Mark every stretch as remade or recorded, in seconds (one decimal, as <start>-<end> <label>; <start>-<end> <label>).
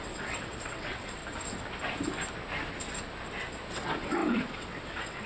0.0-1.2 remade; 1.2-3.7 recorded; 3.7-5.3 remade